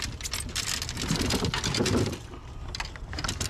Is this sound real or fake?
real